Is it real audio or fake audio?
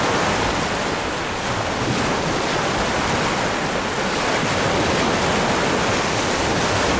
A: real